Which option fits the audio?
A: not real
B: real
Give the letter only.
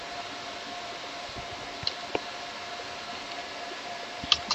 B